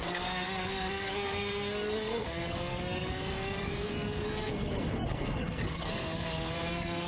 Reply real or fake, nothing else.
fake